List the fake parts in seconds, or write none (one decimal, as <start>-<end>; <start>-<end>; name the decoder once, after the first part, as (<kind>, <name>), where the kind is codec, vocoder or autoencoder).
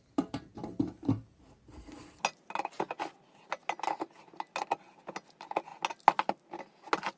none